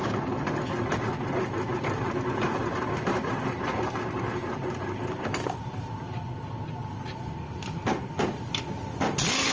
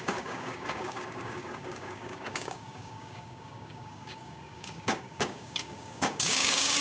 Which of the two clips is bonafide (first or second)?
first